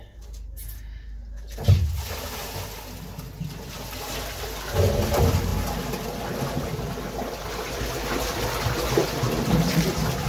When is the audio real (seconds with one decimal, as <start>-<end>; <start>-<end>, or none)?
0.0-10.3